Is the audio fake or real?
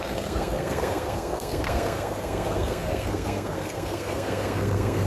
fake